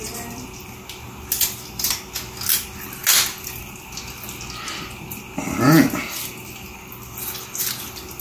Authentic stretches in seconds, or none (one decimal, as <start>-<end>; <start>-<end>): 0.0-8.2

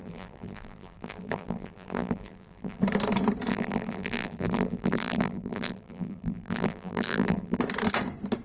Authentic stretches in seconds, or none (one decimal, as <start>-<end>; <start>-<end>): 2.8-3.5; 7.6-8.4